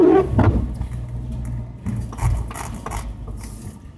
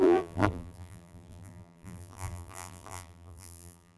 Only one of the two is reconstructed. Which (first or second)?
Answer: second